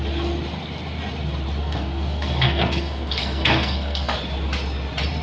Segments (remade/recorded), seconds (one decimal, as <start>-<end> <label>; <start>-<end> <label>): 0.0-1.6 recorded; 1.6-4.2 remade; 4.2-5.2 recorded